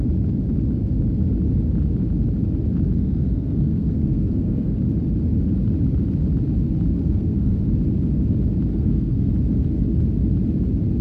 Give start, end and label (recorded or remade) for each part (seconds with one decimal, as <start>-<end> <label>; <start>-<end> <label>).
0.0-3.0 recorded; 3.0-4.7 remade; 4.7-7.0 recorded; 7.0-7.6 remade; 7.6-8.7 recorded; 8.7-9.3 remade; 9.3-11.0 recorded